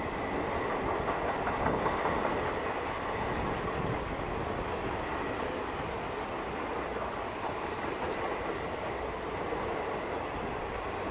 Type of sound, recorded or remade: recorded